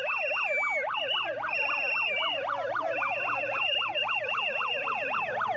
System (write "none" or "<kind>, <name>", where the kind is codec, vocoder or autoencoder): none